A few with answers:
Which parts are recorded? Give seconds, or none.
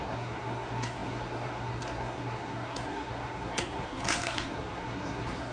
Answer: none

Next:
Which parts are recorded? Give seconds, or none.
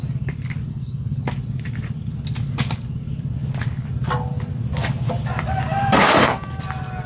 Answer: 0.0-0.7; 1.2-7.1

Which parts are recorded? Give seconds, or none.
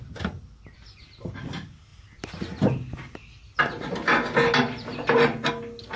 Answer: 0.0-6.0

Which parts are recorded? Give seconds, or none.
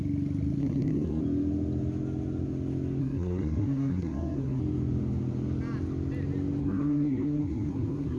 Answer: 0.0-0.6; 1.2-3.0; 4.6-6.6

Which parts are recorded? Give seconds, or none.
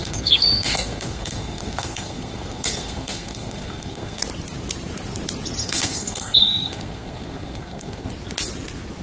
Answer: 4.2-5.6; 8.1-9.0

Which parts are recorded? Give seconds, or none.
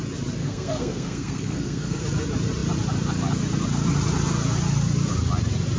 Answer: 0.0-0.4; 2.0-5.8